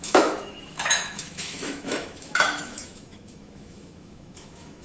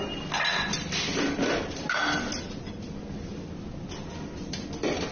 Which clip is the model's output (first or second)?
first